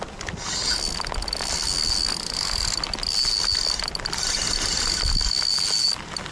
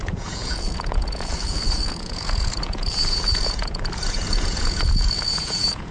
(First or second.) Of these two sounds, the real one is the first